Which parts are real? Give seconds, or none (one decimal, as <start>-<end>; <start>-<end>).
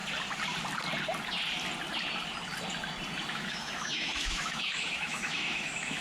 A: 0.0-3.3